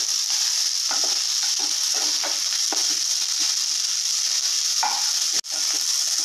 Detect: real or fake real